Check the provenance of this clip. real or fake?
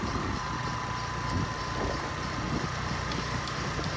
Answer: real